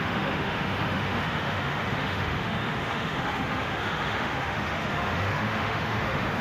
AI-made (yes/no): yes